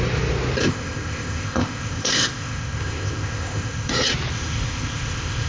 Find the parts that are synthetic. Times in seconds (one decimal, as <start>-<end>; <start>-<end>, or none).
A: 0.6-3.9; 4.3-5.5